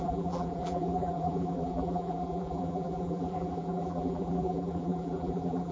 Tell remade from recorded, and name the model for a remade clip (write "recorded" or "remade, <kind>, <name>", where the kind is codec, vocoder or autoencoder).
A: remade, vocoder, BigVGAN v2